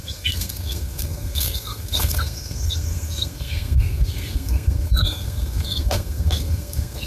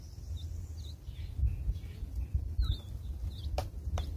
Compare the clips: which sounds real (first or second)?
second